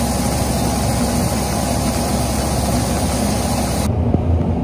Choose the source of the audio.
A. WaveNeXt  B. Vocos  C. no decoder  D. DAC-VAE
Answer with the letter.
C